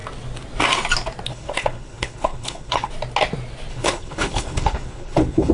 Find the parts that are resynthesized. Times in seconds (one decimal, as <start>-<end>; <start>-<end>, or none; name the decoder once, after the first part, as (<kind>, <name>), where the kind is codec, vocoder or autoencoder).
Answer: 1.3-2.9 (codec, HILCodec); 3.7-5.5